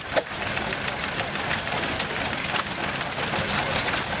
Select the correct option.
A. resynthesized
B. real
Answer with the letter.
B